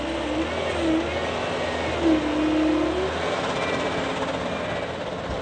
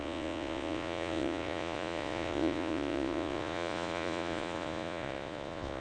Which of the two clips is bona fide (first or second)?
first